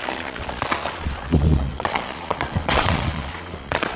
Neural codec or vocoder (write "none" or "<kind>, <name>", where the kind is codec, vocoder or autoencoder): vocoder, Vocos